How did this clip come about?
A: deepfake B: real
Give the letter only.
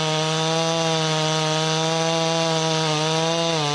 B